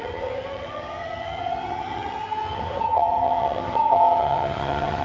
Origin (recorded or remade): remade